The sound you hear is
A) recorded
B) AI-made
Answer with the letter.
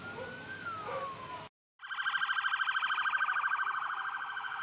A